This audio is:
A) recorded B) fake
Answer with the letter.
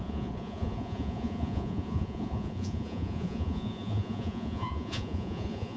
B